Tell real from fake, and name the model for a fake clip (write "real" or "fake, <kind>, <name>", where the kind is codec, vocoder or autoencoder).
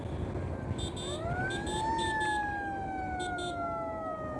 real